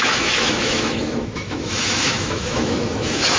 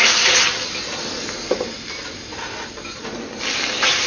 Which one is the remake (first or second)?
first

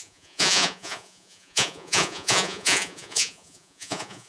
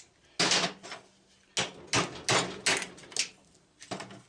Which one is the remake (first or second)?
first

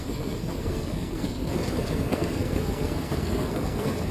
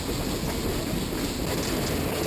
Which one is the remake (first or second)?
first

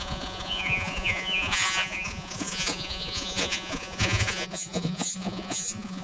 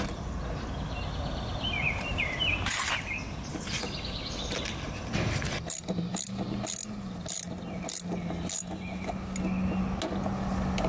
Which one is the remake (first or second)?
first